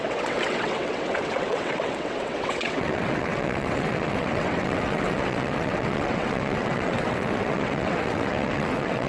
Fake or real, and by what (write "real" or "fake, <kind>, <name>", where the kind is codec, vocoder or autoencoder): fake, vocoder, WaveNeXt